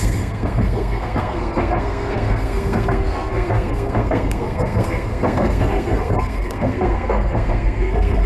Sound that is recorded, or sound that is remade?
remade